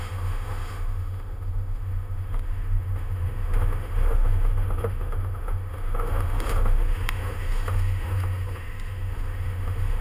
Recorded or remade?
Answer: remade